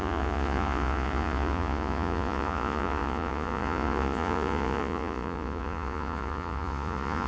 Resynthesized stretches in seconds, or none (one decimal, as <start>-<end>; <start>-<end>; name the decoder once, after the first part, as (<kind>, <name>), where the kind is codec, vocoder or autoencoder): 0.0-7.3 (vocoder, Vocos)